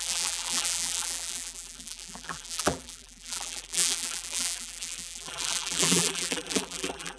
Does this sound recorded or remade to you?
remade